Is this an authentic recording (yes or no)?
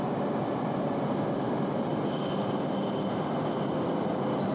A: yes